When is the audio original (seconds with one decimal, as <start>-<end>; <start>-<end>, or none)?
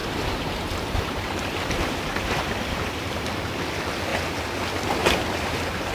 3.5-4.1; 4.6-5.0